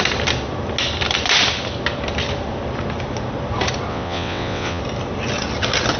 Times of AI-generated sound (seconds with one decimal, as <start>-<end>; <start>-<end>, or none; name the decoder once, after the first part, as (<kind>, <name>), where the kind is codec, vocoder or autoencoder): 3.9-4.8 (vocoder, WaveNeXt)